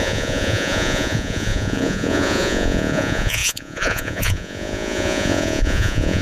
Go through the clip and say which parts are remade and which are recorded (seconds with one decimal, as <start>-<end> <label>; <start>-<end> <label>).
0.0-6.2 remade